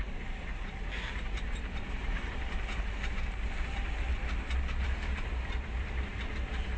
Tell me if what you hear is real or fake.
fake